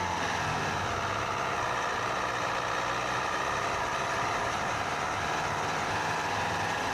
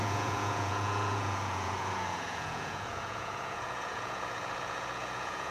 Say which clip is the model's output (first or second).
second